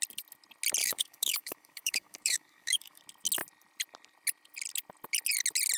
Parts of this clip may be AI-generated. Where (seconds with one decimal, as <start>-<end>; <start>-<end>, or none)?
0.8-3.0